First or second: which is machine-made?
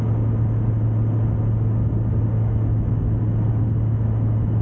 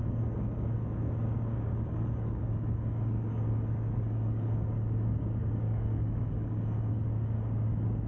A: second